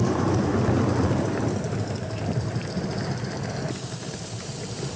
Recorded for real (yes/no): yes